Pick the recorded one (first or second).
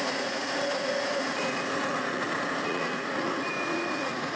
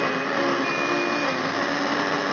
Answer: second